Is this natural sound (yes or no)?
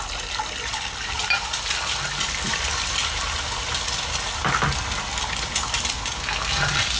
yes